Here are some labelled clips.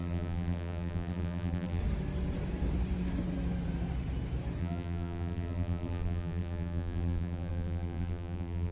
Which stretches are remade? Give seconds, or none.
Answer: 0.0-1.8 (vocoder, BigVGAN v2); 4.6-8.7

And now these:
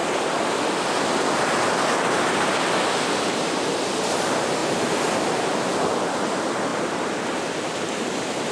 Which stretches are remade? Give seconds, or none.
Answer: 2.8-4.6 (vocoder, BigVGAN v2); 5.7-8.5

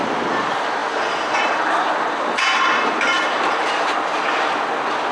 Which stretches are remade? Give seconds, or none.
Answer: 0.8-3.9 (vocoder, BigVGAN v2)

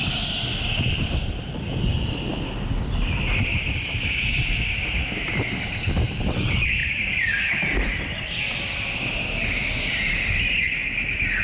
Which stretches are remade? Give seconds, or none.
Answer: none

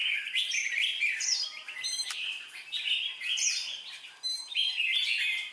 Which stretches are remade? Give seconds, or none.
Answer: 0.0-5.5 (vocoder, BigVGAN v2)

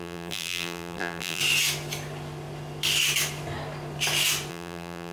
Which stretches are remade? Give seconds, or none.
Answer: 0.0-1.4 (vocoder, BigVGAN v2); 4.5-5.1

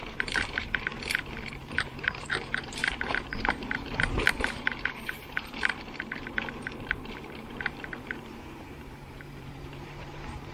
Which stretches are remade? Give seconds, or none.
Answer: 0.0-0.9 (vocoder, BigVGAN v2); 1.5-10.5

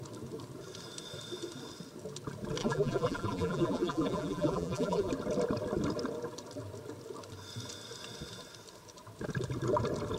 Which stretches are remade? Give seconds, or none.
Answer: 2.6-5.1 (vocoder, BigVGAN v2)